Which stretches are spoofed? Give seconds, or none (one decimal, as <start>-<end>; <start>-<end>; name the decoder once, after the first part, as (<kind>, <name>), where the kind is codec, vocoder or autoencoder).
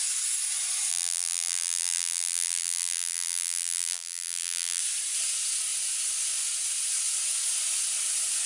0.9-4.8 (vocoder, BigVGAN v2)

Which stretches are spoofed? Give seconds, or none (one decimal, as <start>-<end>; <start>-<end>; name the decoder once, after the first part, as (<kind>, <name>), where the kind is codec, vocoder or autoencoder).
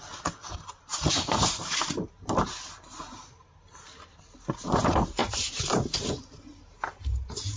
0.9-2.0 (vocoder, BigVGAN v2); 5.2-6.2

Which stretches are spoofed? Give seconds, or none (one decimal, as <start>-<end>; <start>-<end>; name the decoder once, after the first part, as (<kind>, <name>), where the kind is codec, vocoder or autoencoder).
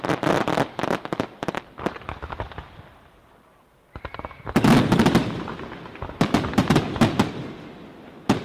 5.2-6.8 (vocoder, BigVGAN v2)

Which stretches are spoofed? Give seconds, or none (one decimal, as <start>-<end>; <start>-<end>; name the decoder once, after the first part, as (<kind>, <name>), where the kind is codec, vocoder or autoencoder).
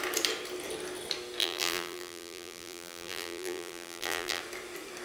1.4-4.4 (vocoder, BigVGAN v2)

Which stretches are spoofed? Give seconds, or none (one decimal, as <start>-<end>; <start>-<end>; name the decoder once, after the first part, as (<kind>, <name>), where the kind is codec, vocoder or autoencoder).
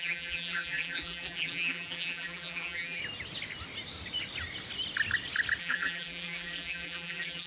0.0-3.0 (vocoder, BigVGAN v2); 5.6-7.5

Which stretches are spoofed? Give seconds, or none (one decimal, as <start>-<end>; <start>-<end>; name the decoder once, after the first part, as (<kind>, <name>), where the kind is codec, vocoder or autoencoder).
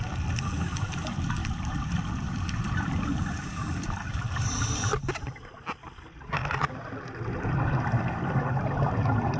1.4-6.2 (vocoder, BigVGAN v2)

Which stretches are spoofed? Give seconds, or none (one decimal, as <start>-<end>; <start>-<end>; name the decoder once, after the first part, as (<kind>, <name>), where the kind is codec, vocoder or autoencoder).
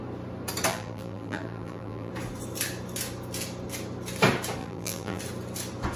0.7-2.1 (vocoder, BigVGAN v2); 4.6-5.2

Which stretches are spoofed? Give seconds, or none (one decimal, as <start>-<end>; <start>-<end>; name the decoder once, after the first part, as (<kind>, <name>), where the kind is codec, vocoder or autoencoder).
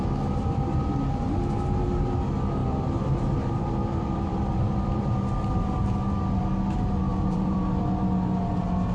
2.6-5.0 (vocoder, BigVGAN v2); 7.1-7.8